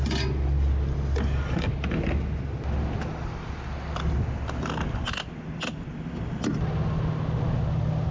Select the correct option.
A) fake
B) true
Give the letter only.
B